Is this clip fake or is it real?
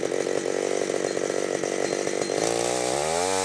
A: real